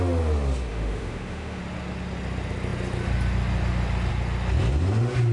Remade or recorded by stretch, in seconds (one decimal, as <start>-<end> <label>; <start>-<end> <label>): 0.0-0.7 recorded; 0.7-1.6 remade; 1.6-5.3 recorded

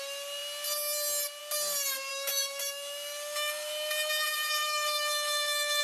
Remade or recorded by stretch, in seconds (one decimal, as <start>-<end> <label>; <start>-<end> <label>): 0.0-2.1 recorded; 2.1-5.8 remade

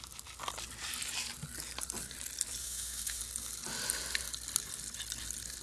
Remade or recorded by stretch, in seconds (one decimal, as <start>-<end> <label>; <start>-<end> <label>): 0.0-2.6 recorded; 2.6-3.2 remade; 3.2-5.6 recorded